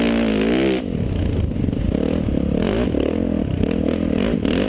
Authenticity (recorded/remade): recorded